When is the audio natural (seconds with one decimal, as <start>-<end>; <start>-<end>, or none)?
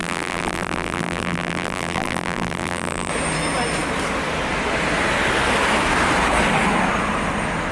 3.1-7.7